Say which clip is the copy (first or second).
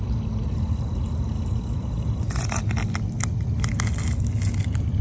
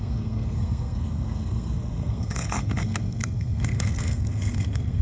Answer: second